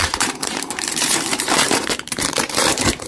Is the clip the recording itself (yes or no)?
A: no